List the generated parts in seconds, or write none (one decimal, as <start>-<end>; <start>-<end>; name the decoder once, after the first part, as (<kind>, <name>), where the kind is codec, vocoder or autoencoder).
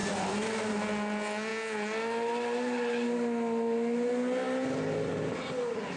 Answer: none